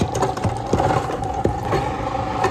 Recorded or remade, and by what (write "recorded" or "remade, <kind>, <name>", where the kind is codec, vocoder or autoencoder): recorded